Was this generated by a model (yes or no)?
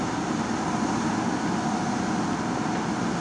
no